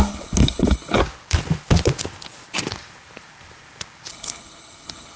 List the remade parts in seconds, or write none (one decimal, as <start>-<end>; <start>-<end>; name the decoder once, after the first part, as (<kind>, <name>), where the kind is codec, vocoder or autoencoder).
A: 0.0-1.0 (codec, HILCodec); 4.1-5.2